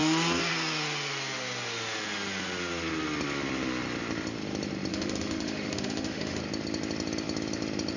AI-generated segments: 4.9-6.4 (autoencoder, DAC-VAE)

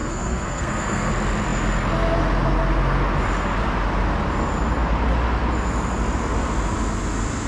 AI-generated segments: 0.0-1.1 (codec, SNAC)

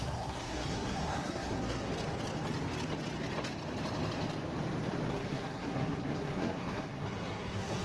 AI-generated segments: 0.0-1.9 (codec, SNAC); 5.1-7.8

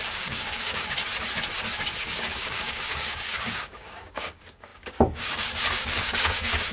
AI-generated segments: 0.0-1.0 (codec, DAC); 2.0-6.7